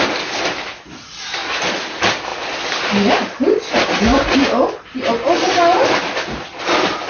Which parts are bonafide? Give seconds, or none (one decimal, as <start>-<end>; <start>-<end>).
0.0-7.1